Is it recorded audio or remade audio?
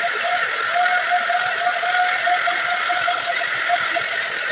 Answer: recorded